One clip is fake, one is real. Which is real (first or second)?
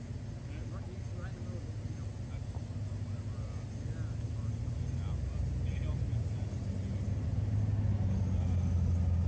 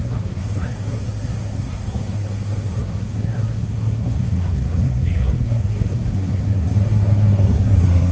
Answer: first